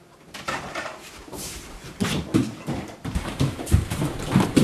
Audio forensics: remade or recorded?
remade